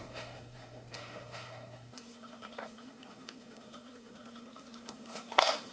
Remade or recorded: remade